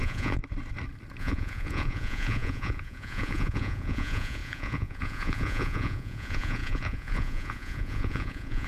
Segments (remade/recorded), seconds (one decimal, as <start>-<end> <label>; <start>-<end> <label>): 0.0-0.4 remade; 0.4-1.2 recorded; 1.2-8.7 remade